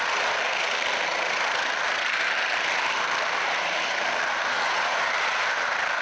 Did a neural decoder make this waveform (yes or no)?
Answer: yes